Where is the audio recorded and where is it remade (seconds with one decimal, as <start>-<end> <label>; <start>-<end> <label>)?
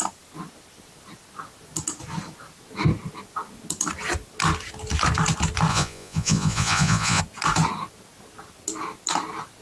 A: 0.0-5.7 recorded; 5.7-7.2 remade; 7.2-9.6 recorded